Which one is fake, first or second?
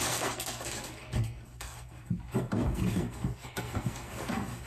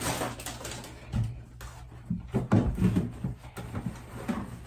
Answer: first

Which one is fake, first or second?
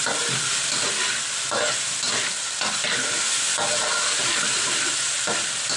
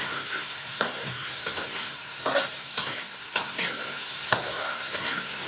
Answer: second